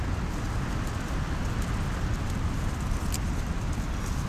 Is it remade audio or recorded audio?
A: recorded